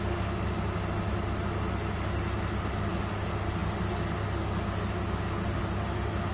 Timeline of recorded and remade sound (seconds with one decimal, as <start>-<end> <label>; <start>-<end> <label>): 0.0-6.3 recorded